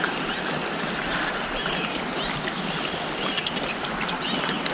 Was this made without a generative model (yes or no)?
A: yes